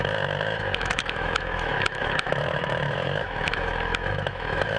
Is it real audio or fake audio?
fake